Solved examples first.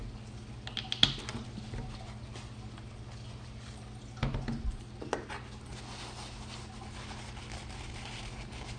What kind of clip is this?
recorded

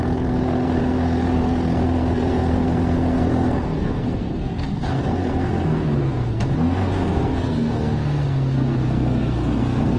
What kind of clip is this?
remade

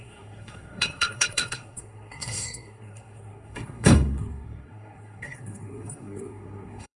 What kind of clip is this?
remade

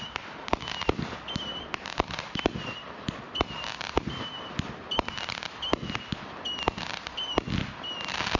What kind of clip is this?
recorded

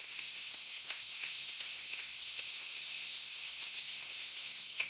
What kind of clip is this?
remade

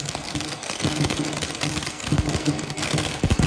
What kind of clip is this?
remade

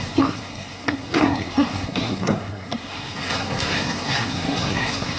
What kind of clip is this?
remade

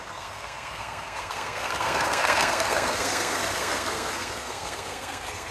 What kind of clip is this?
remade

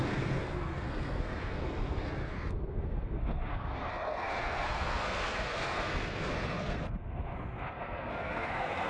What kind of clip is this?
remade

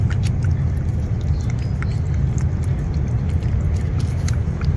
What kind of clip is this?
recorded